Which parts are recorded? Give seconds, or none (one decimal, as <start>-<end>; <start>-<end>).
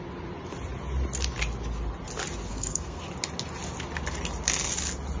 0.0-2.5; 3.0-5.2